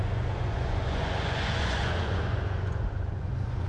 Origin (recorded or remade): remade